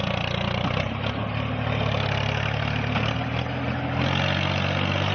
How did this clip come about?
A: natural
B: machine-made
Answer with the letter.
A